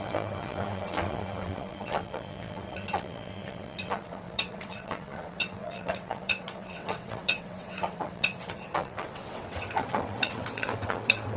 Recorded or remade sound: remade